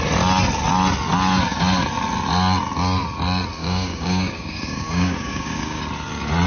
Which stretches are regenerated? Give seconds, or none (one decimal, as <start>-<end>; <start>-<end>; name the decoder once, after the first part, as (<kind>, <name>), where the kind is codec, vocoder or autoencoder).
3.6-5.8 (codec, DAC)